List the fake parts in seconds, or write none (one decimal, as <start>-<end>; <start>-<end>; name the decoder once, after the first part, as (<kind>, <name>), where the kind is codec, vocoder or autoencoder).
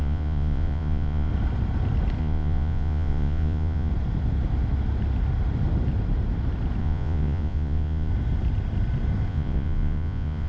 0.0-1.3 (vocoder, Vocos); 2.2-3.9; 6.8-8.1; 9.3-10.5